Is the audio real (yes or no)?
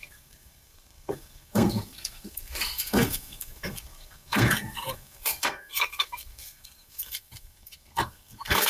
no